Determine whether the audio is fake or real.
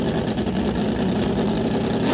real